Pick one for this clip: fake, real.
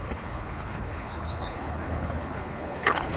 fake